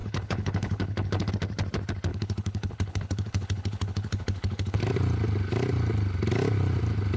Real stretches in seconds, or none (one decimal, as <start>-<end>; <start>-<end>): 1.3-2.1; 4.8-7.2